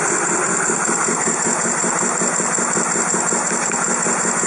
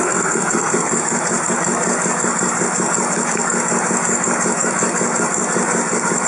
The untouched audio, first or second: first